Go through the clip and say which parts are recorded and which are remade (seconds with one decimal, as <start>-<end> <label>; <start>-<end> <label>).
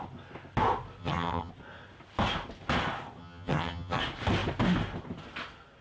0.0-1.0 recorded; 1.0-1.5 remade; 1.5-3.2 recorded; 3.2-4.0 remade; 4.0-5.8 recorded